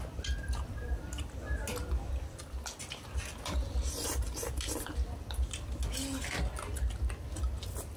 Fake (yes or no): no